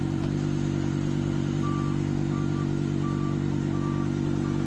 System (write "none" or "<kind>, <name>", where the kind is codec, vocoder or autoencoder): none